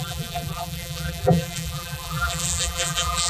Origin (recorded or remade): remade